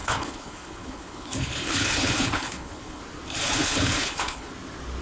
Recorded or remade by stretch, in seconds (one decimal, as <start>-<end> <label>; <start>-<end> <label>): 0.0-3.0 remade; 3.0-3.4 recorded; 3.4-4.5 remade; 4.5-5.0 recorded